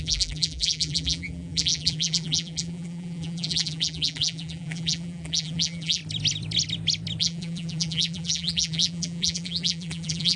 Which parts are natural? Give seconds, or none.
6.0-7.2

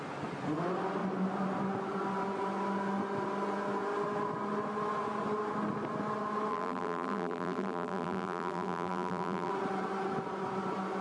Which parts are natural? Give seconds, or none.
0.0-6.5; 9.5-11.0

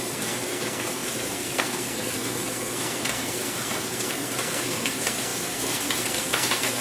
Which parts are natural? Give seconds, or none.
none

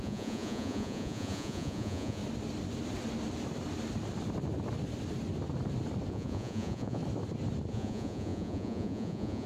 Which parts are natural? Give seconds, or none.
2.2-6.1; 7.0-7.7

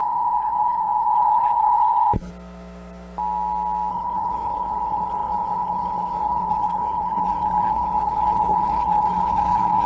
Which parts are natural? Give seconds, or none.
2.3-3.9

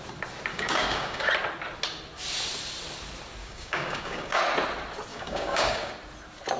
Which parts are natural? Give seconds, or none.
0.0-0.5; 1.3-3.4; 4.4-5.1; 5.9-6.6

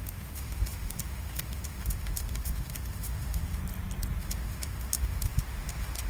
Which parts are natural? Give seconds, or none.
3.6-4.2

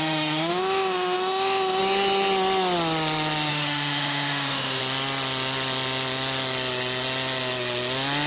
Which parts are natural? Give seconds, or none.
1.8-3.5; 4.8-8.3